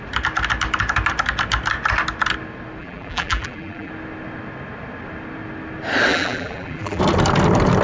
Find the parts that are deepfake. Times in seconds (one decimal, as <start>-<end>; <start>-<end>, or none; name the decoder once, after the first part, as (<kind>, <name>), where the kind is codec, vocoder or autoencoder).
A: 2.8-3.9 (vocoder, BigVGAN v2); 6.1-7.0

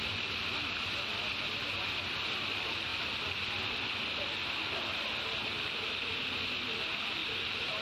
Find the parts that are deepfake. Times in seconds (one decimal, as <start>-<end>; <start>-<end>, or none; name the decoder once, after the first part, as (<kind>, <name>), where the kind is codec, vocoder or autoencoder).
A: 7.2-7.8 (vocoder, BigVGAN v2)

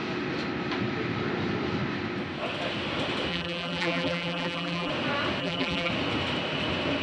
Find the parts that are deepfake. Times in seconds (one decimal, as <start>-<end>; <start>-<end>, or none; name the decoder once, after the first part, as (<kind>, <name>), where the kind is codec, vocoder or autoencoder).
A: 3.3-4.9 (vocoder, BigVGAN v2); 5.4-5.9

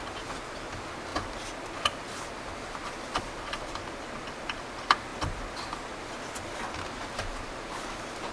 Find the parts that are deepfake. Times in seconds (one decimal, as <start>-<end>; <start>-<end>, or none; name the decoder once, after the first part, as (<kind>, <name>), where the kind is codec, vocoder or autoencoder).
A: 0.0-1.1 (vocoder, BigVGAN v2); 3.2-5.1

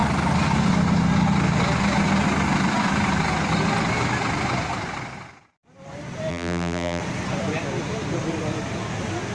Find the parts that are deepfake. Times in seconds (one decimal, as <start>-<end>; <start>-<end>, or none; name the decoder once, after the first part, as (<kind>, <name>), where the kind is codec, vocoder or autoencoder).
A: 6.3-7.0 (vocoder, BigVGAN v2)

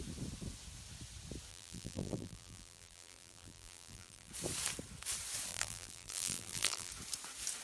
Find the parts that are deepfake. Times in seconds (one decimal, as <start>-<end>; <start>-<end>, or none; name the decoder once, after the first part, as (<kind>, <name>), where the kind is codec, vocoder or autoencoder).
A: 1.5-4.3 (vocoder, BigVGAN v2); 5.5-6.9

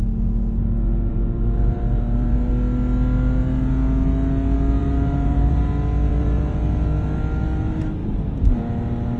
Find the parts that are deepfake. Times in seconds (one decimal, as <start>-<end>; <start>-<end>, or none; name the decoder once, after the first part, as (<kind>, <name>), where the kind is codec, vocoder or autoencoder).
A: 1.1-2.5 (vocoder, BigVGAN v2); 4.8-5.6; 6.1-6.6

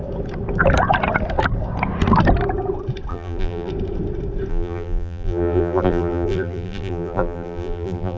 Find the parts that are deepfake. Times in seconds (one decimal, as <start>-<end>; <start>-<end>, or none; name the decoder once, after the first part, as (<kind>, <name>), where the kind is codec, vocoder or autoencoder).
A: 3.1-3.7 (vocoder, BigVGAN v2); 4.5-8.2